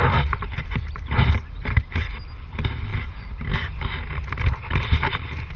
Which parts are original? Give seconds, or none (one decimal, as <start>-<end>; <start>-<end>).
0.0-5.6